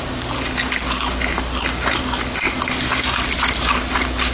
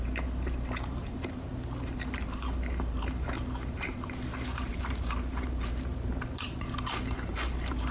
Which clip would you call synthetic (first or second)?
second